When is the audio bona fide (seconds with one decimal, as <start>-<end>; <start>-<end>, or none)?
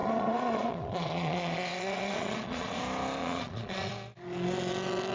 2.8-3.2; 3.9-5.1